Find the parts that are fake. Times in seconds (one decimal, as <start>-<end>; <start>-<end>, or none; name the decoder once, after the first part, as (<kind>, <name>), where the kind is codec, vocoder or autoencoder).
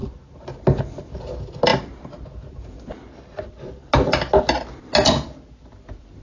none